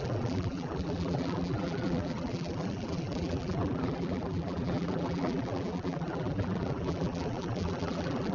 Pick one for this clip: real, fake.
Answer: fake